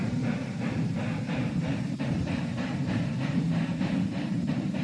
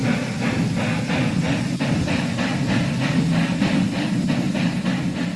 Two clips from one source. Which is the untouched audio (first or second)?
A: second